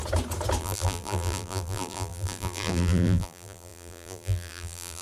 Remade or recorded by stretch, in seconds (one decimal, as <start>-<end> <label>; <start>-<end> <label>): 0.0-0.6 recorded; 0.6-5.0 remade